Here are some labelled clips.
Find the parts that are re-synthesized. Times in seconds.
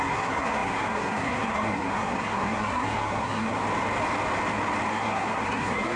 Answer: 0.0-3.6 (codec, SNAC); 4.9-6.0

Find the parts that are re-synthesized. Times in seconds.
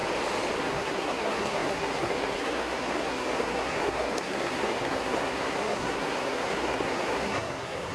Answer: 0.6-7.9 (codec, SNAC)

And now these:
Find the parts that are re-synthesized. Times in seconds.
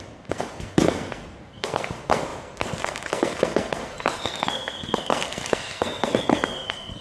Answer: 0.0-7.0 (codec, SNAC)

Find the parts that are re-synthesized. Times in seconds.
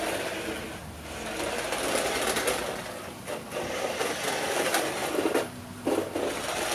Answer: none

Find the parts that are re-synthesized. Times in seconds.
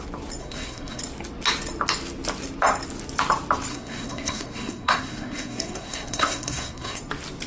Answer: 0.4-1.0 (codec, SNAC); 3.7-7.0